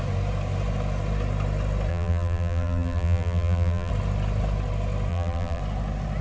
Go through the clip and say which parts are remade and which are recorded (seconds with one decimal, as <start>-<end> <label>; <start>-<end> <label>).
0.0-1.9 recorded; 1.9-3.9 remade; 3.9-5.1 recorded; 5.1-5.6 remade; 5.6-6.2 recorded